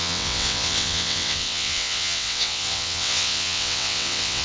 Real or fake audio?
fake